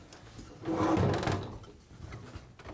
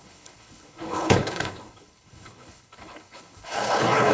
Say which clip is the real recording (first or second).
first